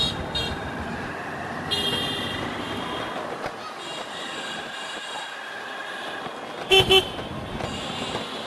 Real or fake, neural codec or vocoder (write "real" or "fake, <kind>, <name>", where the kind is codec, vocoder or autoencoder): real